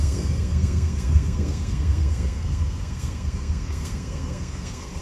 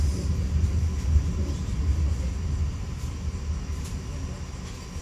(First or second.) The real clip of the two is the second